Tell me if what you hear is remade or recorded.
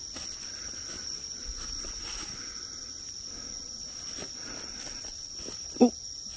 recorded